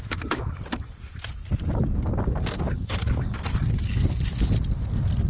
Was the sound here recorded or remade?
recorded